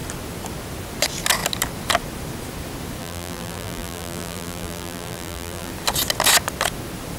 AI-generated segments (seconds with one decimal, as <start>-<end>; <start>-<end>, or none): 3.0-5.7